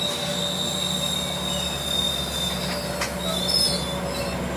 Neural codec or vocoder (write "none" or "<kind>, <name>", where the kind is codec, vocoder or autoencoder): none